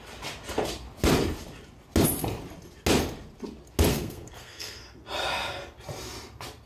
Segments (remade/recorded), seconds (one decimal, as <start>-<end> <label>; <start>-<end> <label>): 0.0-3.9 recorded; 3.9-4.8 remade; 4.8-6.7 recorded